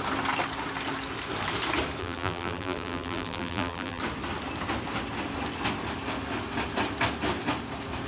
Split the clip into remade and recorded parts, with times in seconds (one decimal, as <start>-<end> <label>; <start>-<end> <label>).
0.0-2.0 recorded; 2.0-4.0 remade; 4.0-8.1 recorded